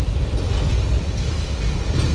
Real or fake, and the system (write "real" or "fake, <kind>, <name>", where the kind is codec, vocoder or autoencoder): real